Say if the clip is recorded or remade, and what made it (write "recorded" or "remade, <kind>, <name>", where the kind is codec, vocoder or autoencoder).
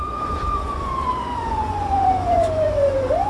remade, vocoder, Vocos